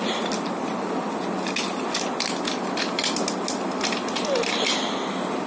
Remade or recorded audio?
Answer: recorded